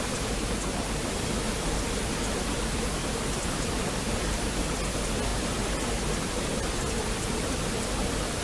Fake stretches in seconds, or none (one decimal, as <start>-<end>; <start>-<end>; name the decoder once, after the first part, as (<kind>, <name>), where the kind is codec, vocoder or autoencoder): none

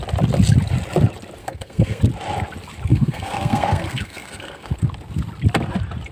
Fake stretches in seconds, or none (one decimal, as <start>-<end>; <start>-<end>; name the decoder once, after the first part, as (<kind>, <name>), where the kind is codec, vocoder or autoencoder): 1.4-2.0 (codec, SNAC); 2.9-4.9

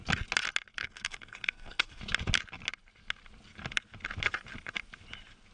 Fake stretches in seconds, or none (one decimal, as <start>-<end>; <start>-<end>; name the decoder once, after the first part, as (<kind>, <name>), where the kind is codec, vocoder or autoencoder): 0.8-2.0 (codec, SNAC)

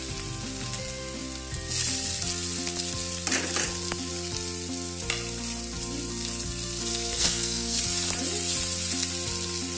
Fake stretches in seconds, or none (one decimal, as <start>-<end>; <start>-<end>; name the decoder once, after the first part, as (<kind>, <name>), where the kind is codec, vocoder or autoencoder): 6.9-7.8 (codec, SNAC)

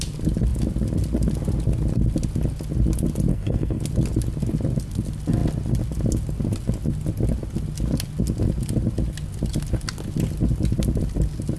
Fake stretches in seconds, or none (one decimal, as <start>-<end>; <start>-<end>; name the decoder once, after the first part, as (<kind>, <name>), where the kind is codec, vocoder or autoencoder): 3.3-3.8 (codec, SNAC)

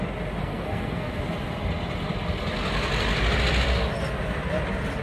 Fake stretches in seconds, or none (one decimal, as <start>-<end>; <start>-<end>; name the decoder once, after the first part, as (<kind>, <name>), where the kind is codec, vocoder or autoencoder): 0.4-1.2 (codec, SNAC)

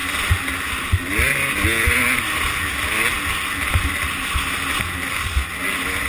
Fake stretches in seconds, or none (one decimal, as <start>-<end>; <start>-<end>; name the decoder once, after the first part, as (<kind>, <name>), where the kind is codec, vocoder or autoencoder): none

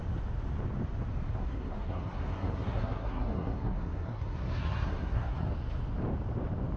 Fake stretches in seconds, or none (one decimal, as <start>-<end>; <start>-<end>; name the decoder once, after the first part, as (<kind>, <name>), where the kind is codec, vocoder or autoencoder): 1.4-5.5 (codec, SNAC)